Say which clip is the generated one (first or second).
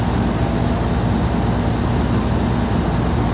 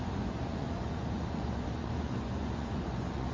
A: second